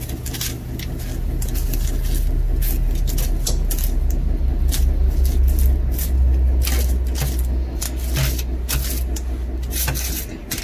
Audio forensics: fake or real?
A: real